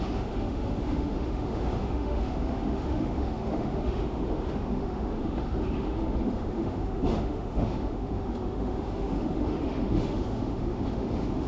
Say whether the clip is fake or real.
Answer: fake